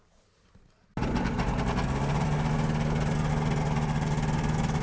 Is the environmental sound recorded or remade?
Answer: recorded